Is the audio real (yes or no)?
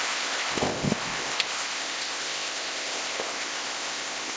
no